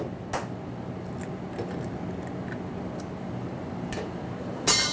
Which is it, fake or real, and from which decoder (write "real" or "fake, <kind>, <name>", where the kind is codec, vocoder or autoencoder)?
real